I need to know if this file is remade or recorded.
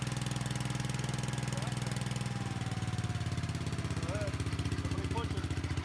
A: recorded